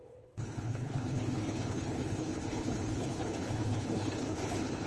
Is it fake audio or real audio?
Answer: fake